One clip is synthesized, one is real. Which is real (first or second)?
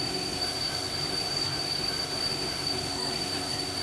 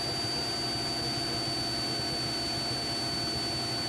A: second